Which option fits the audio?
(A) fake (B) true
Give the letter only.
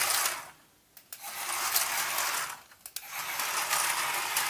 B